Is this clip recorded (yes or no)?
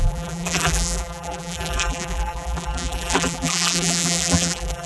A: no